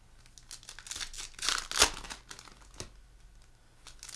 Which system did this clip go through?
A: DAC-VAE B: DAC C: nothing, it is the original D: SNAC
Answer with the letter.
C